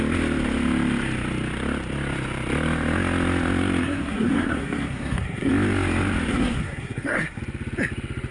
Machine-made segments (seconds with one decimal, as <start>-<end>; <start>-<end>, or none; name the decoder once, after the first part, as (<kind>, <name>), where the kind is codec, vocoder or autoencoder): 3.8-5.5 (codec, SNAC); 6.3-7.4